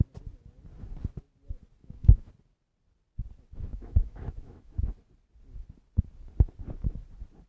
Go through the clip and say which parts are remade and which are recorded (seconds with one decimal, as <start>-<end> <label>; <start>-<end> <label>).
0.0-1.8 recorded; 1.8-2.3 remade; 2.3-3.7 recorded; 3.7-4.8 remade; 4.8-7.5 recorded